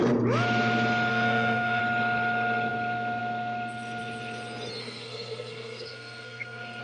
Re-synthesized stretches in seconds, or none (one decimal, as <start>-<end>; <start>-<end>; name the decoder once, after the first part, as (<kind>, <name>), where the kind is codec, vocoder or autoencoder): 1.1-1.8 (codec, SNAC); 4.8-6.8